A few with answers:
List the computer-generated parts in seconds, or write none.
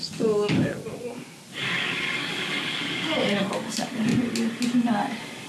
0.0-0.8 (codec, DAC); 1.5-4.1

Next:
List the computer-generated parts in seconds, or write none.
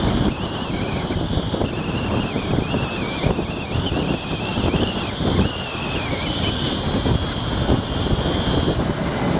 4.5-6.2 (vocoder, BigVGAN v2)